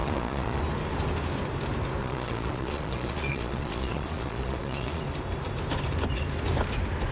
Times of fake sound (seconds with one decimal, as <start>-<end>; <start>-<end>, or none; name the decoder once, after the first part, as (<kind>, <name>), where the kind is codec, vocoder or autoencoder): 0.0-0.6 (vocoder, Vocos); 2.0-5.0